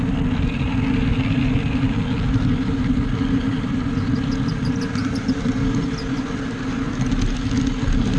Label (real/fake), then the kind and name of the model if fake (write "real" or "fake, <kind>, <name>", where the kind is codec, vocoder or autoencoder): real